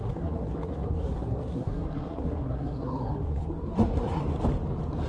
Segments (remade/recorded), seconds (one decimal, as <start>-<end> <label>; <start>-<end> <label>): 0.0-4.2 remade; 4.2-5.1 recorded